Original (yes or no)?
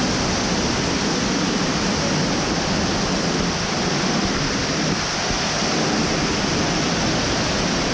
yes